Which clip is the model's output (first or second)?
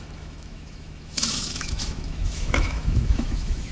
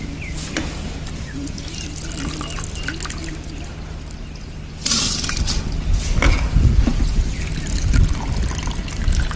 first